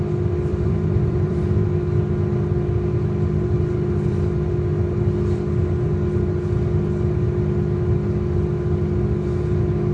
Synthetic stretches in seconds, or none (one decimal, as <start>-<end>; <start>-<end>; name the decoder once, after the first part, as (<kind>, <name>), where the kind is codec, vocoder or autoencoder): 0.5-1.6 (vocoder, BigVGAN v2)